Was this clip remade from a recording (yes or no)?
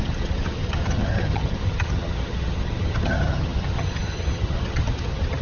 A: yes